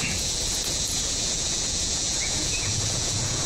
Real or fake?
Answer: fake